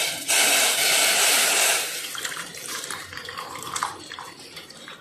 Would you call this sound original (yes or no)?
no